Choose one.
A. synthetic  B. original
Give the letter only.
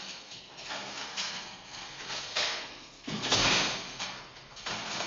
A